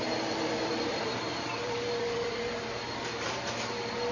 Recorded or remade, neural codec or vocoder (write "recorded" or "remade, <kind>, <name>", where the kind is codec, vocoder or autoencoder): remade, vocoder, BigVGAN v2